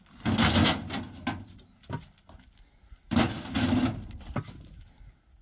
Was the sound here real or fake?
real